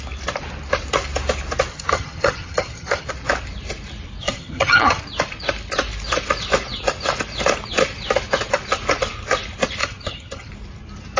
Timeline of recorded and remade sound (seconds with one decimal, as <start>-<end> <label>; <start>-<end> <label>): 0.0-1.7 recorded; 1.7-3.1 remade; 3.1-4.2 recorded; 4.2-5.0 remade; 5.0-9.8 recorded; 9.8-10.5 remade; 10.5-11.2 recorded